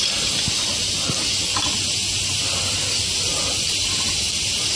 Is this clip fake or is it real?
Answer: real